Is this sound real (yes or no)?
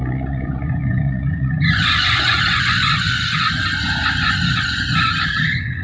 no